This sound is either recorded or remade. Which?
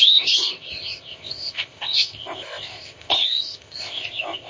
remade